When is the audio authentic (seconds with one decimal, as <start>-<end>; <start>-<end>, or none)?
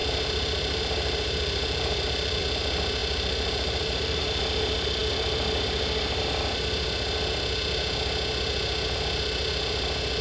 2.4-3.0; 4.2-10.2